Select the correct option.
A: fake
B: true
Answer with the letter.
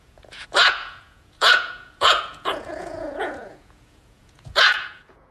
A